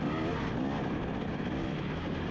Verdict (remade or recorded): recorded